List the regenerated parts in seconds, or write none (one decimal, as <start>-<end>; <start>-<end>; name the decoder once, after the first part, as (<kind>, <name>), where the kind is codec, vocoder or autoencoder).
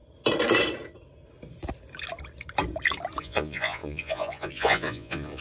3.2-5.4 (vocoder, Vocos)